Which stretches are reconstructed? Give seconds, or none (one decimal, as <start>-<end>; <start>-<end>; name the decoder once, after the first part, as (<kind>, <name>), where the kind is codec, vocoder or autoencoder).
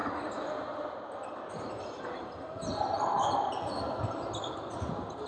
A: none